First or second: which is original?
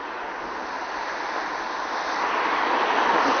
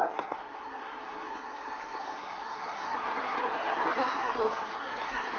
first